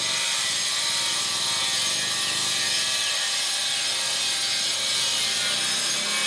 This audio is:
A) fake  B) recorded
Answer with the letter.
B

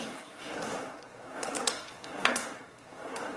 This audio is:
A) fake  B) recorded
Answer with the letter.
A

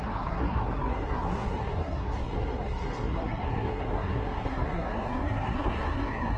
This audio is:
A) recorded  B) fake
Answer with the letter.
B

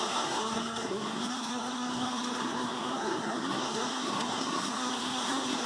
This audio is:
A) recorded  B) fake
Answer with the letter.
B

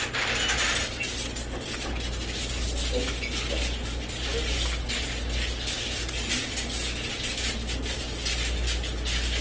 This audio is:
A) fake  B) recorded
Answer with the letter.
B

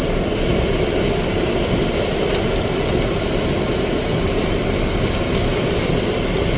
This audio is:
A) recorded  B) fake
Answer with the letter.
A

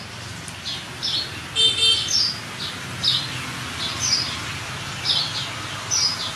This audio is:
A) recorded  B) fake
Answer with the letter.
A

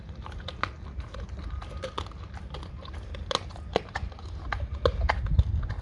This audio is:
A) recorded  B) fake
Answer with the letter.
A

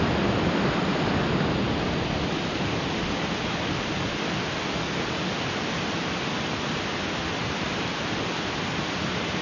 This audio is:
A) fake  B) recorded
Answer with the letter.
B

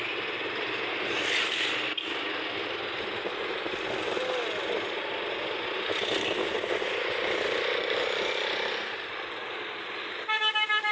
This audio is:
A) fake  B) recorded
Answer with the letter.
B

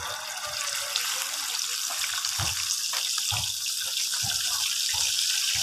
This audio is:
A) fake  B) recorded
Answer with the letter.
B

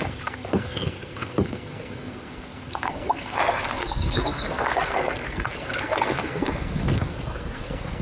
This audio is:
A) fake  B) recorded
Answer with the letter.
A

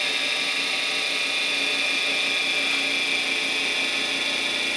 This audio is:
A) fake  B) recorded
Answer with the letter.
B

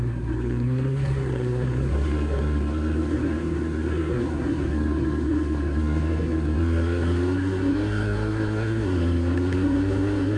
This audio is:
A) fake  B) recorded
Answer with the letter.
A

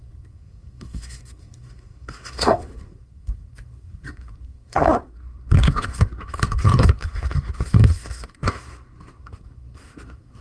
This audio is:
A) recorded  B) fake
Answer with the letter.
B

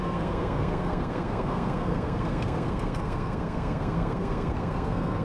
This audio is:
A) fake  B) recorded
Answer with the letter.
A